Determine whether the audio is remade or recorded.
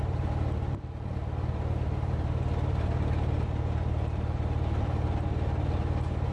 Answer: remade